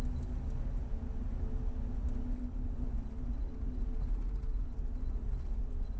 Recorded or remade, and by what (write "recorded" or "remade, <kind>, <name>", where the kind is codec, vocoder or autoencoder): recorded